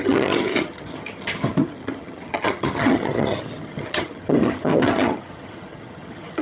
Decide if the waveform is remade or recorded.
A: remade